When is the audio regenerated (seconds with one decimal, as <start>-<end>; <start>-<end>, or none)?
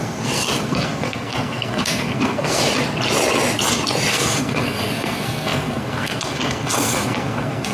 0.0-2.6; 4.1-7.7